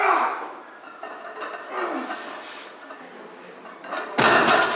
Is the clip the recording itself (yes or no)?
yes